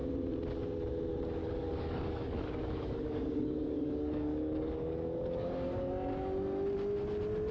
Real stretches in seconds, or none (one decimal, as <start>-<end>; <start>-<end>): 0.0-1.4; 5.9-7.5